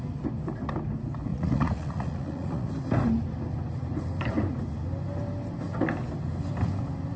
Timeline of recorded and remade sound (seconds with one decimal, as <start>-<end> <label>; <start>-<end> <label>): 0.0-1.3 recorded; 1.3-2.7 remade; 2.7-7.2 recorded